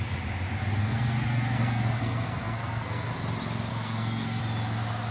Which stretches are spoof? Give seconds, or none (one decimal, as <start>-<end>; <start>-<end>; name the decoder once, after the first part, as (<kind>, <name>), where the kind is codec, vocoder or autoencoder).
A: 0.8-3.1 (codec, SNAC); 3.7-4.4